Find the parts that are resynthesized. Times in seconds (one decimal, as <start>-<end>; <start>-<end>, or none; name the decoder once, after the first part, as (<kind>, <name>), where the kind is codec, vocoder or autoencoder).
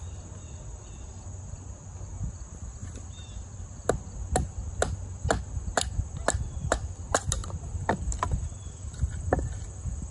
none